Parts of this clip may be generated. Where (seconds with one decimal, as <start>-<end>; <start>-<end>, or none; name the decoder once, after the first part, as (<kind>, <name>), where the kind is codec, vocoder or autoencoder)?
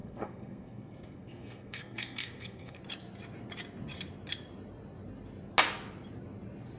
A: 0.0-2.8 (codec, SNAC)